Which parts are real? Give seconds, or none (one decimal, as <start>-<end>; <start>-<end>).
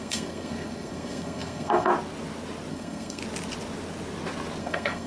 1.9-2.7; 3.2-4.6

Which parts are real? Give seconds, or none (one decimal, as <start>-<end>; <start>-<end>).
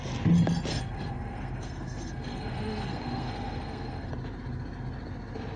0.0-0.7; 4.1-5.6